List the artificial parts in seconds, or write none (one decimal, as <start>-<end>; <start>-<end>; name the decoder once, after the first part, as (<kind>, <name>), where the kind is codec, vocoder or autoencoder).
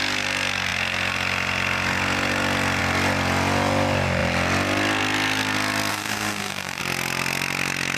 5.9-6.8 (codec, DAC)